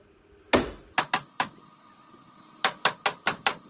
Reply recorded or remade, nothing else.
recorded